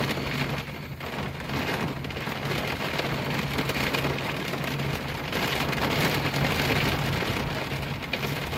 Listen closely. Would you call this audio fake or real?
real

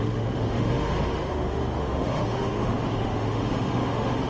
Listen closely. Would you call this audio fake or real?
fake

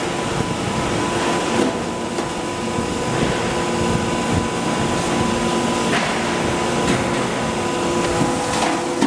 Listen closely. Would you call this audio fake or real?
real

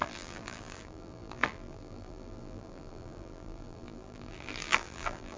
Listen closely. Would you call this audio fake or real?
fake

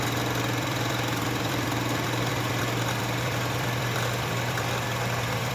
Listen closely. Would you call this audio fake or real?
fake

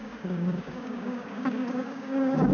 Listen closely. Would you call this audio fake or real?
fake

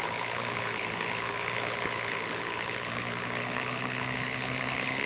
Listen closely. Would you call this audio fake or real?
fake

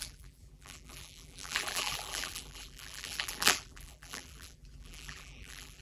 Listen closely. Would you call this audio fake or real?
fake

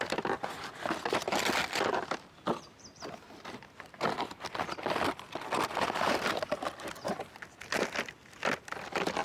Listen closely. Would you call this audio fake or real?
real